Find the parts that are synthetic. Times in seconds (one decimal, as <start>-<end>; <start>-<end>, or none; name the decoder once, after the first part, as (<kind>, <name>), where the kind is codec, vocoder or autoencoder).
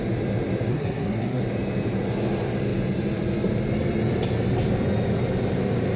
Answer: 0.7-1.4 (codec, SNAC)